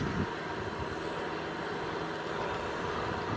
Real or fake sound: real